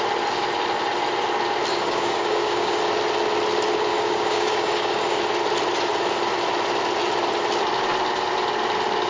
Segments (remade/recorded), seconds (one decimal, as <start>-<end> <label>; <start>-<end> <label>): 0.0-1.7 recorded; 1.7-2.8 remade; 2.8-3.9 recorded; 3.9-5.2 remade; 5.2-9.1 recorded